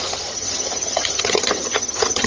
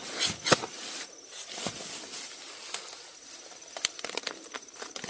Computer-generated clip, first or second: first